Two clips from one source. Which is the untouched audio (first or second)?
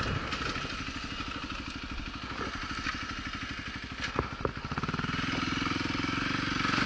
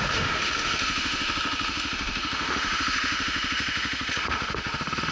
first